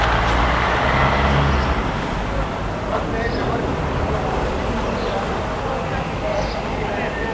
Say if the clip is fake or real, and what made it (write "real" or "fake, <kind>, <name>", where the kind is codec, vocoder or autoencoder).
real